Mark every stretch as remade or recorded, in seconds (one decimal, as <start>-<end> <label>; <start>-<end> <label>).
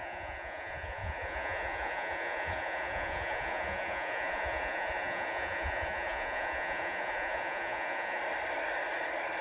0.0-8.2 remade; 8.2-9.4 recorded